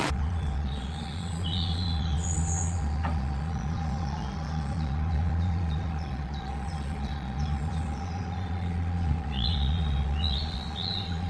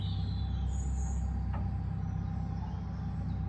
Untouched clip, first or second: second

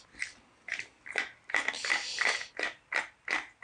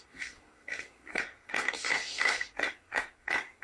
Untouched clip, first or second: first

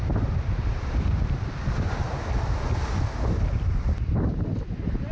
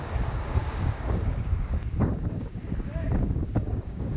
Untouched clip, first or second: first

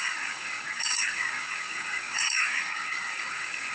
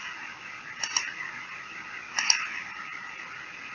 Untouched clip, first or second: second